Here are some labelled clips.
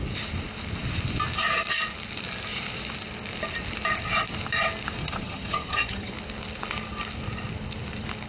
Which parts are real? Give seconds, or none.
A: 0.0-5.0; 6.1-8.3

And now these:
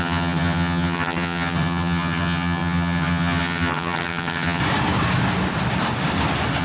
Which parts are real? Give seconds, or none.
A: 4.6-6.6

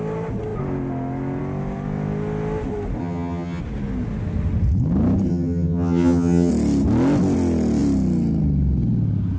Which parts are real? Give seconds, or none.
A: 0.0-3.0; 3.6-5.3; 6.5-9.4